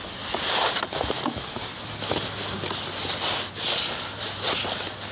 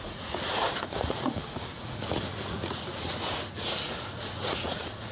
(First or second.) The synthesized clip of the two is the second